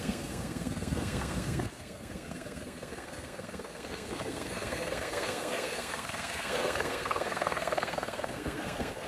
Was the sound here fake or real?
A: fake